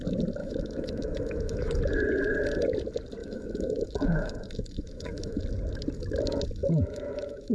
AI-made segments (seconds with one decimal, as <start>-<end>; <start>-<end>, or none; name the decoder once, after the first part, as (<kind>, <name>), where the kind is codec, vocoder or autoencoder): 0.4-1.8 (autoencoder, DAC-VAE); 3.2-5.4; 6.6-7.5